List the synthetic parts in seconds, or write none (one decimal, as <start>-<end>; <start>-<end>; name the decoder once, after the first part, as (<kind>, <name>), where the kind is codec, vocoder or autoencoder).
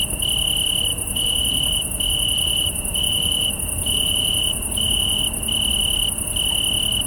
0.9-5.2 (vocoder, Vocos)